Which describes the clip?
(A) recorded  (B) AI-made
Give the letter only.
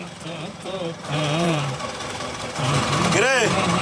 B